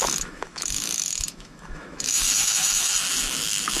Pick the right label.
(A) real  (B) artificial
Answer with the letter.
B